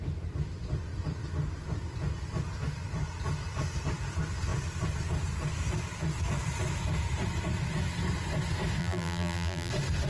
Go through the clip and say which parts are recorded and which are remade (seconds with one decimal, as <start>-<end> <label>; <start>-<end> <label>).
0.0-8.8 recorded; 8.8-9.7 remade; 9.7-10.1 recorded